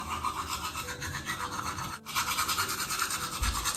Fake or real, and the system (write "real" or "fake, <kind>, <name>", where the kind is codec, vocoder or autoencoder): real